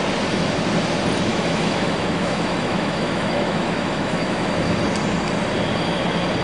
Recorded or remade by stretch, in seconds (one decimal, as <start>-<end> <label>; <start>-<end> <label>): 0.0-1.3 recorded; 1.3-4.8 remade; 4.8-6.4 recorded